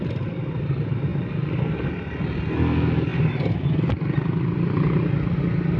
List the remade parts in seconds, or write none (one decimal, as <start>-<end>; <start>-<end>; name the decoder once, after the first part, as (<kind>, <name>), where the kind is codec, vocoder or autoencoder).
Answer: none

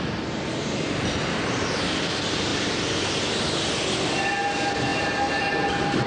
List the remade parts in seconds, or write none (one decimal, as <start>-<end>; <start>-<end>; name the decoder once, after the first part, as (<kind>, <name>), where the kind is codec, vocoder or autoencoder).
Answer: 2.5-3.2 (vocoder, BigVGAN v2); 4.9-6.1